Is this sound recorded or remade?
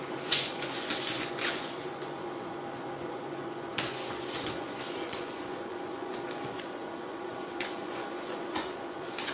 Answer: remade